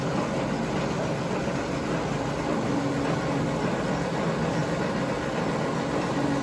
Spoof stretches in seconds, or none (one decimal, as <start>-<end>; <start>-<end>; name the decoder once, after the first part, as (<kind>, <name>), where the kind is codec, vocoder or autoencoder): none

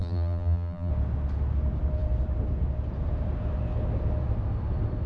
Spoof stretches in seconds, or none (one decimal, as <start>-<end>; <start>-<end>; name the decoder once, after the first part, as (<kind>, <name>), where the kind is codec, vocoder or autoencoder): 0.0-0.9 (vocoder, BigVGAN v2)

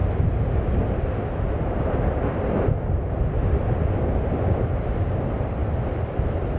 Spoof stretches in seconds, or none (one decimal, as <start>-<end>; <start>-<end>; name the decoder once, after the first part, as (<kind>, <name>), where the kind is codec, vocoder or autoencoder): 5.6-6.1 (vocoder, BigVGAN v2)

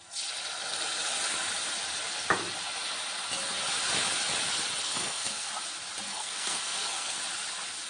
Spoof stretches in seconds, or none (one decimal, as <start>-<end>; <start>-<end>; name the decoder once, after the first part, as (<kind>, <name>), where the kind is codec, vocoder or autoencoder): 4.8-5.5 (codec, SNAC); 6.1-7.2

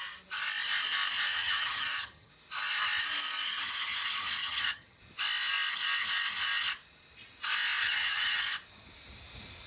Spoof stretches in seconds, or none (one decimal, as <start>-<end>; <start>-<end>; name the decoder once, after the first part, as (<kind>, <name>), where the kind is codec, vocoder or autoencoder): 1.3-2.3 (vocoder, HiFi-GAN); 4.4-5.0; 7.8-8.4

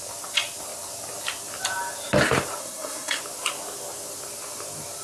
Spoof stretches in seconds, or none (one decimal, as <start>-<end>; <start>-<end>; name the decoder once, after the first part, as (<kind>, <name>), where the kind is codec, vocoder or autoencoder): 2.6-3.2 (codec, SNAC)

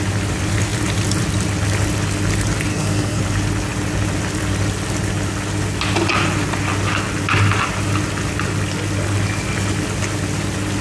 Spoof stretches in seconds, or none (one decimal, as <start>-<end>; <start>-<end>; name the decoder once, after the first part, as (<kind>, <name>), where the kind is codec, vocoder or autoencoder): 2.7-3.2 (codec, SNAC)

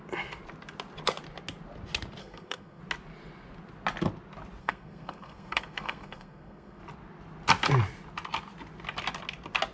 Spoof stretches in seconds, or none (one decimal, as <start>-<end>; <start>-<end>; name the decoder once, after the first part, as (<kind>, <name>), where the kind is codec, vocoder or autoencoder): 2.2-2.8 (codec, SNAC); 4.6-6.8